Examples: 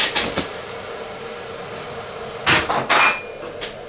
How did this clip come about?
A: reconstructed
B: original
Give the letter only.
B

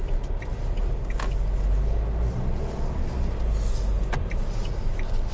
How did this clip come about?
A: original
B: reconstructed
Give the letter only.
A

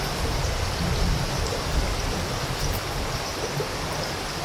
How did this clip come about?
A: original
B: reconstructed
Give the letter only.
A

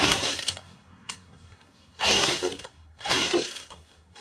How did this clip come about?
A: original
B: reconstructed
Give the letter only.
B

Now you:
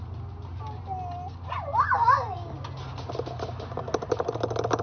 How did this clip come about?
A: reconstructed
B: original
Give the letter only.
B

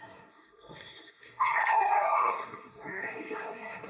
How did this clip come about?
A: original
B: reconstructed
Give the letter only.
B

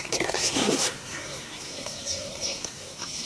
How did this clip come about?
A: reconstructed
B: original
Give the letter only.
A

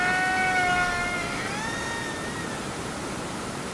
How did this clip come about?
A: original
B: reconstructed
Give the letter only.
A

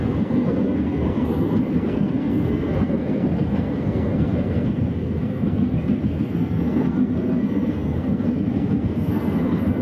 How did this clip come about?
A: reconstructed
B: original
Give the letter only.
A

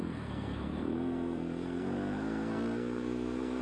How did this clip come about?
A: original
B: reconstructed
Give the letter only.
B